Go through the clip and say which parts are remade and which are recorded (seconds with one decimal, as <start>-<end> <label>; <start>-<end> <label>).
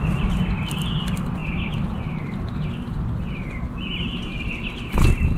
0.0-5.4 recorded